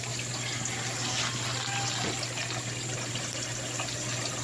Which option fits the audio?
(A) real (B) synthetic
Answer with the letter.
A